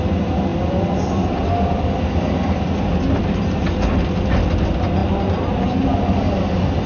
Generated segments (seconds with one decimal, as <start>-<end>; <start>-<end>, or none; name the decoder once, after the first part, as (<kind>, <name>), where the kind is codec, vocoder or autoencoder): none